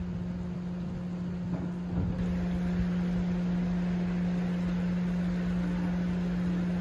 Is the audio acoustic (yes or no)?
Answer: yes